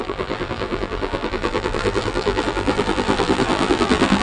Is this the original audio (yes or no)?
no